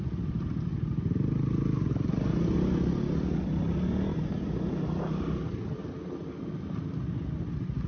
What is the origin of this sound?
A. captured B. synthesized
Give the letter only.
A